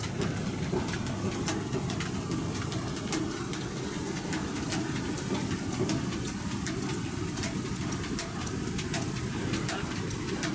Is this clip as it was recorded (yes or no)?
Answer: yes